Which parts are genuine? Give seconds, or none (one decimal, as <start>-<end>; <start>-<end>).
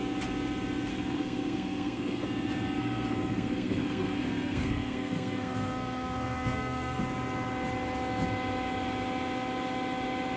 0.0-0.9; 2.2-2.8; 7.0-10.4